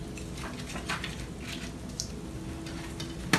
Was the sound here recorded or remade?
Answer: recorded